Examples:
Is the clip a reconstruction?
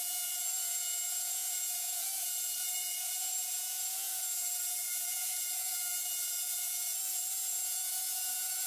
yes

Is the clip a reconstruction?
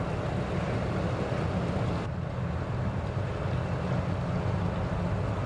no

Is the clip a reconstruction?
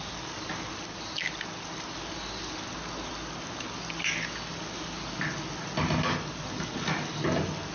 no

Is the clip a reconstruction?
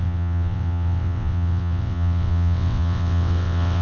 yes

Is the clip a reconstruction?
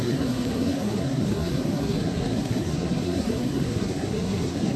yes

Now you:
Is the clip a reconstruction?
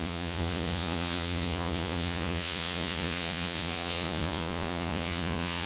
yes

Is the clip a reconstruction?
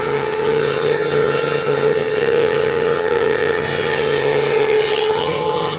yes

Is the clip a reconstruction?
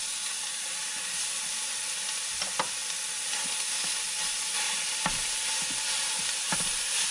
no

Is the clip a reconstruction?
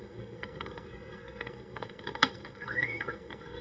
yes